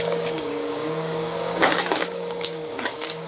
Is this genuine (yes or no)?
no